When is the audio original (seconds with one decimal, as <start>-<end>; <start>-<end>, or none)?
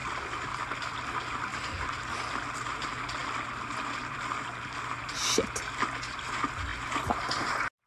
0.6-7.9